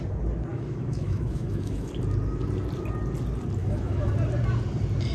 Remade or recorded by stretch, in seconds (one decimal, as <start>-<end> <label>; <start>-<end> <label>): 0.0-0.5 recorded; 0.5-1.9 remade; 1.9-3.6 recorded; 3.6-4.1 remade; 4.1-5.1 recorded